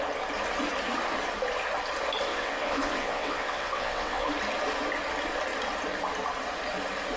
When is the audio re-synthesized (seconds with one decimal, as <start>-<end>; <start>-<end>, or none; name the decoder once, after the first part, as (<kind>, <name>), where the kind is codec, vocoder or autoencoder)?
2.3-4.3 (vocoder, WaveNeXt)